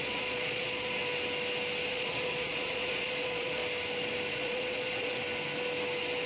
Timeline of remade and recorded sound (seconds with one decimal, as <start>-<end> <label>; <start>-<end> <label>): 0.0-1.0 remade; 1.0-1.9 recorded; 1.9-3.6 remade; 3.6-4.3 recorded; 4.3-5.2 remade; 5.2-6.3 recorded

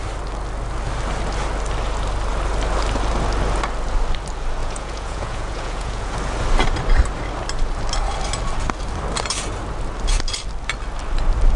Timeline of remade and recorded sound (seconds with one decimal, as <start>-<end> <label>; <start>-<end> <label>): 0.0-4.6 recorded; 4.6-6.1 remade; 6.1-11.6 recorded

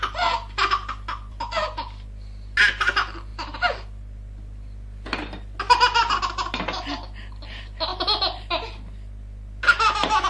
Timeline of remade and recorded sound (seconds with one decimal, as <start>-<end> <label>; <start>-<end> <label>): 0.0-10.3 recorded

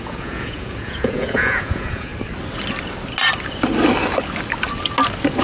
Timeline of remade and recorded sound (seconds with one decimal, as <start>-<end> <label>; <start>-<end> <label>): 0.0-2.1 remade; 2.1-5.4 recorded

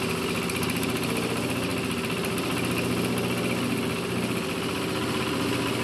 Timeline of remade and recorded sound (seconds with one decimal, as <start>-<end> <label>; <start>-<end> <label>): 0.0-5.8 recorded

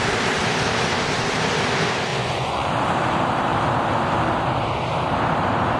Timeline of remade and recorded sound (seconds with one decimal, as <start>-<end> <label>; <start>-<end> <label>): 0.0-2.1 recorded; 2.1-2.7 remade; 2.7-5.8 recorded

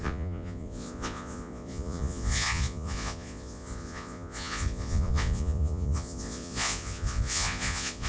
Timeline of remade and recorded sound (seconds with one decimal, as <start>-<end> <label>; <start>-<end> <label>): 0.0-8.1 remade

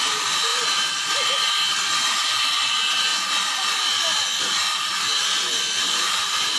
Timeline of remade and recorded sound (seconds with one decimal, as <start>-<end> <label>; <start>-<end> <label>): 0.0-6.6 recorded